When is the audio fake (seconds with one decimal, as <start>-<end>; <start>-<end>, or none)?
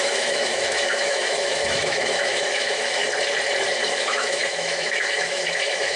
0.0-3.0; 3.7-6.0